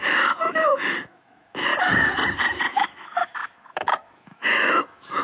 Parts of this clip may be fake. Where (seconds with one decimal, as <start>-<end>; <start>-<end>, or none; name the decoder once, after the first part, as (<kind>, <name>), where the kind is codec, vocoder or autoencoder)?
0.0-1.7 (autoencoder, DAC-VAE); 2.7-5.2